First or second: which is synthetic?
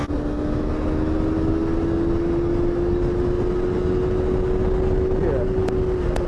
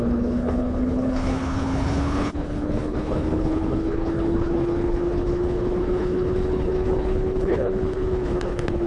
second